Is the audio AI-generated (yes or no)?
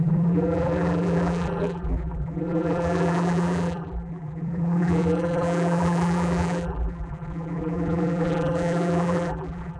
yes